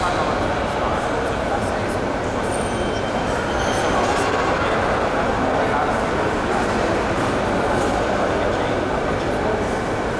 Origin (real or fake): real